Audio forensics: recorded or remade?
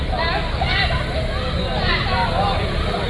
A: recorded